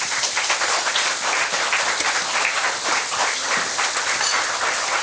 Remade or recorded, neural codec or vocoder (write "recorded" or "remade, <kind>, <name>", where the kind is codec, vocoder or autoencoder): recorded